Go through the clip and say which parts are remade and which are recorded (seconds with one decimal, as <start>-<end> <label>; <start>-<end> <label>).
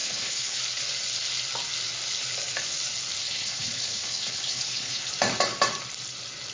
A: 0.0-0.6 remade; 0.6-3.2 recorded; 3.2-5.1 remade; 5.1-6.5 recorded